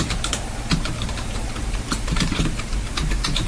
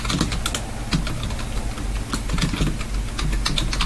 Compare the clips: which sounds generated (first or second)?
first